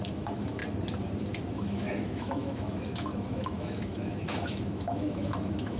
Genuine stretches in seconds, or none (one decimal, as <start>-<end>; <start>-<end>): 0.6-1.5